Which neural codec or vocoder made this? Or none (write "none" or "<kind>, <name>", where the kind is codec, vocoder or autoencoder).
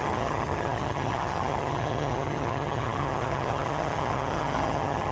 vocoder, HiFi-GAN